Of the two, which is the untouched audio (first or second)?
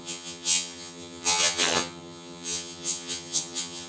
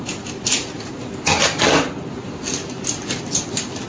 second